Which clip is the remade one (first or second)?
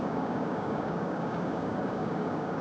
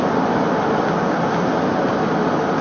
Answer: first